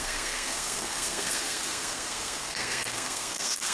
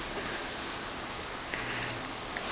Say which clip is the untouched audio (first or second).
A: second